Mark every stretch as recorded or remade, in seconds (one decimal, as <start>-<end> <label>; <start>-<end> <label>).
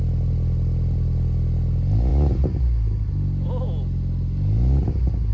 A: 0.0-5.3 recorded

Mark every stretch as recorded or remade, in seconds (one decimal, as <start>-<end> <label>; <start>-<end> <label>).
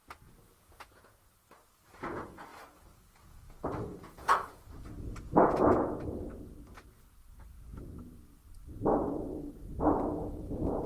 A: 0.0-7.7 remade; 7.7-10.1 recorded; 10.1-10.9 remade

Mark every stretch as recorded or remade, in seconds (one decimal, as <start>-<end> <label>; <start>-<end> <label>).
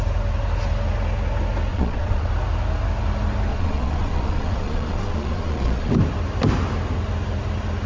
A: 0.0-1.7 recorded; 1.7-2.3 remade; 2.3-3.5 recorded; 3.5-5.9 remade; 5.9-7.9 recorded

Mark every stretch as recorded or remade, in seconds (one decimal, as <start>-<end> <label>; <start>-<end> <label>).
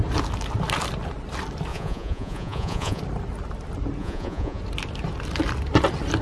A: 0.0-1.7 recorded; 1.7-3.0 remade; 3.0-4.0 recorded; 4.0-4.6 remade; 4.6-6.2 recorded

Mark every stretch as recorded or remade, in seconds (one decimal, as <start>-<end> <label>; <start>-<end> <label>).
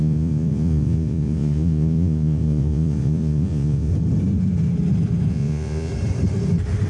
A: 0.0-3.9 remade; 3.9-5.3 recorded; 5.3-5.9 remade; 5.9-6.9 recorded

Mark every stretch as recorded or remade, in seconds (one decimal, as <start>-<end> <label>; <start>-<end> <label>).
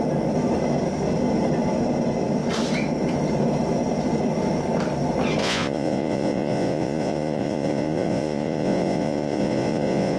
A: 0.0-5.4 recorded; 5.4-10.2 remade